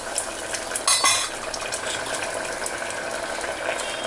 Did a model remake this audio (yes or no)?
no